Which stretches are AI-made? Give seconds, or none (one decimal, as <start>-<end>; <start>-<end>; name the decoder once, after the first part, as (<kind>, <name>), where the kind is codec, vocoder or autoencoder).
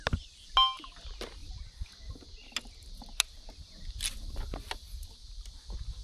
1.4-2.1 (vocoder, BigVGAN v2)